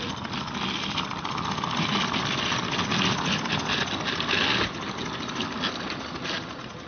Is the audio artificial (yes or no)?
no